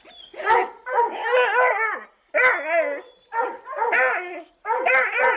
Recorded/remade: recorded